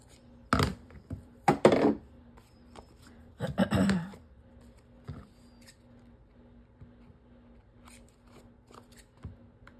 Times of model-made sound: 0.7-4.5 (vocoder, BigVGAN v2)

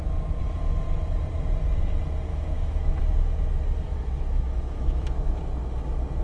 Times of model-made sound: 2.3-3.0 (autoencoder, DAC-VAE); 3.9-5.4

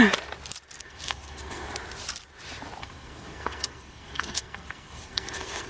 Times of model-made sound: 0.8-1.7 (codec, SNAC); 2.8-5.7

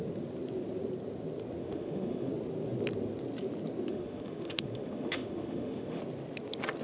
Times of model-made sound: 1.6-2.3 (autoencoder, DAC-VAE); 3.9-6.0

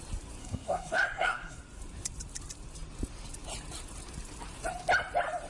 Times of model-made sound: 0.4-1.6 (codec, SNAC)